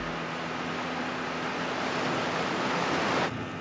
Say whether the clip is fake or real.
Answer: real